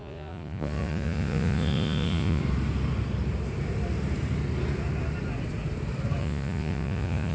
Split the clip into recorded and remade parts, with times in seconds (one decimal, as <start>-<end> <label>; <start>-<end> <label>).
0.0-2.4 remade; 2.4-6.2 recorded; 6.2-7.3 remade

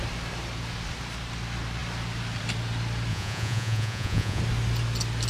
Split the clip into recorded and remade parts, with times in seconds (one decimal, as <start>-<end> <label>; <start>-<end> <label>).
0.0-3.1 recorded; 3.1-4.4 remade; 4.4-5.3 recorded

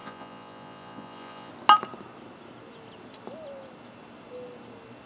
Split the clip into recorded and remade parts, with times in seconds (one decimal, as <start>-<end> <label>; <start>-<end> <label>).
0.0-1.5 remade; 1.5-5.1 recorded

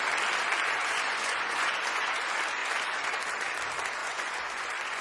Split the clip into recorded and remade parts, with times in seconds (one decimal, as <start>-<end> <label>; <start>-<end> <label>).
0.0-0.8 recorded; 0.8-2.2 remade; 2.2-2.6 recorded; 2.6-3.2 remade; 3.2-4.0 recorded; 4.0-5.0 remade

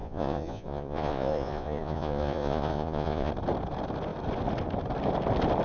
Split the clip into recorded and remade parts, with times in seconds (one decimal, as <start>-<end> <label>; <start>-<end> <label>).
0.0-3.3 remade; 3.3-5.6 recorded

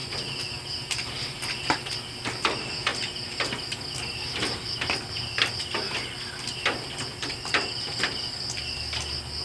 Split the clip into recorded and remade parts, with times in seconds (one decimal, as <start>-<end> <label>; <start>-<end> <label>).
0.0-9.4 recorded

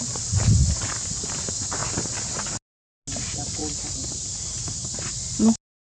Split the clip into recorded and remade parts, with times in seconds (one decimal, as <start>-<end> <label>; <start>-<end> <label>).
0.0-5.9 recorded

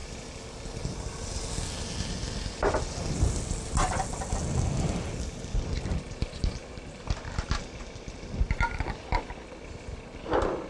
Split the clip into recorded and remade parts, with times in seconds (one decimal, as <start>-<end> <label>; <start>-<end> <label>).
0.0-10.7 recorded